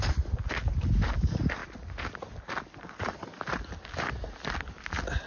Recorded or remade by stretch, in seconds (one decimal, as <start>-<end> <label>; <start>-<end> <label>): 0.0-5.3 recorded